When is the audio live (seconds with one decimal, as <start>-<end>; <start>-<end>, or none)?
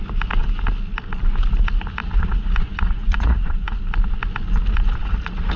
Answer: 0.0-2.0; 3.8-5.0